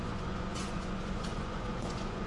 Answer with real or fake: fake